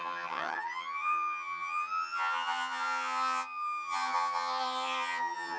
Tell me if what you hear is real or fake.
fake